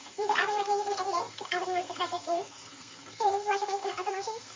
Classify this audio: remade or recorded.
remade